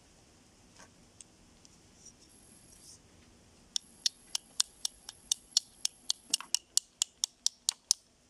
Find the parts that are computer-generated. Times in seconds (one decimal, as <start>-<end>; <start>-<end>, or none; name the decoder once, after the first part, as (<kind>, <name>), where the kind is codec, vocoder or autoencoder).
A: 2.3-2.9 (vocoder, Vocos); 3.8-6.5